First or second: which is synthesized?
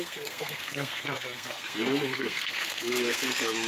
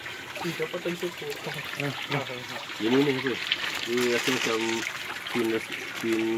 first